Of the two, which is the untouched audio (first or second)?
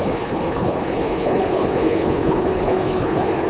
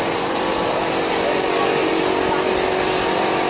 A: second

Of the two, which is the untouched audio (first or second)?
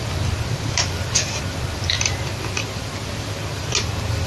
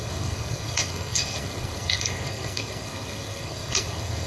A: first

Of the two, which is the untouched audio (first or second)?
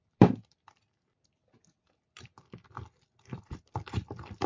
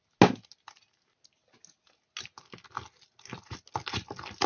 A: second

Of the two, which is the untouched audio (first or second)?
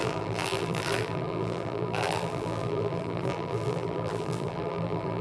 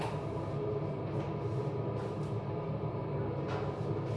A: second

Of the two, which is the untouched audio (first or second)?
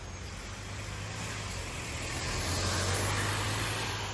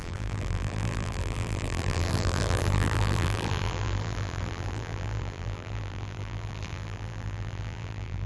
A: first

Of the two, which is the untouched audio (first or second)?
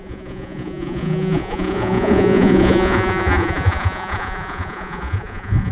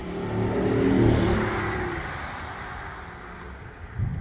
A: second